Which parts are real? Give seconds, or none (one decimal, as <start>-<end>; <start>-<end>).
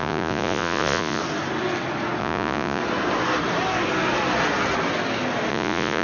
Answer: 1.2-2.2; 2.8-5.5